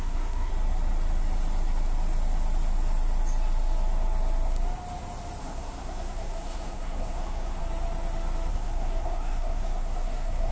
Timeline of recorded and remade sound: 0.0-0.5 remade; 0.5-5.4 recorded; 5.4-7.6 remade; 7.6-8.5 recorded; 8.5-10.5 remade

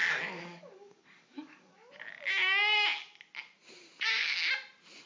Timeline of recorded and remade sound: 0.0-1.9 remade; 1.9-5.1 recorded

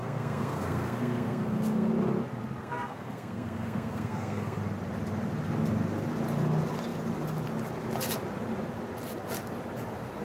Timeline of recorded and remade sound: 0.0-1.9 remade; 1.9-2.6 recorded; 2.6-4.6 remade; 4.6-10.2 recorded

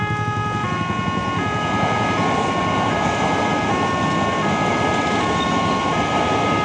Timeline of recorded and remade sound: 0.0-6.6 recorded